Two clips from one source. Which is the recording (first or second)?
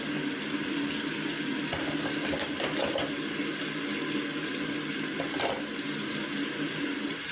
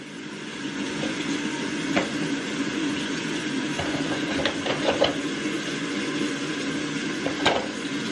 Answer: first